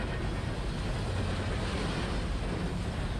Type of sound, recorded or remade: recorded